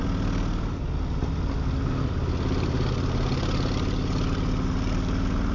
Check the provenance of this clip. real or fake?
real